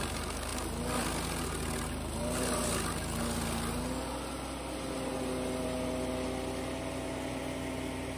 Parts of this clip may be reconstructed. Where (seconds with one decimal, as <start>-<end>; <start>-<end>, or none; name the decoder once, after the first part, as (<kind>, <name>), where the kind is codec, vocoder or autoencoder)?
none